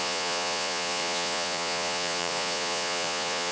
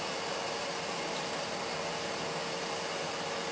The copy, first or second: first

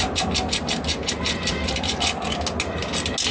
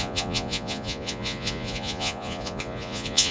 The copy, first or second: second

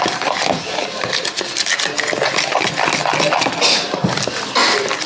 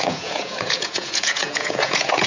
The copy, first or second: second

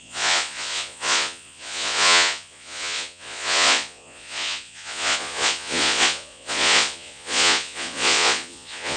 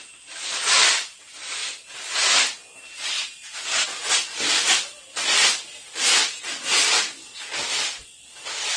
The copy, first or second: first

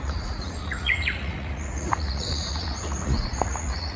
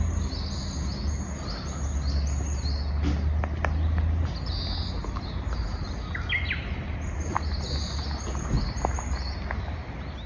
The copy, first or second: first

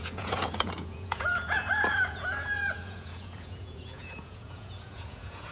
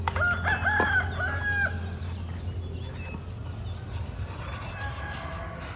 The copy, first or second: first